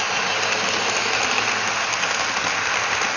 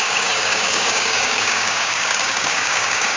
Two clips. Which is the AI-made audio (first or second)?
second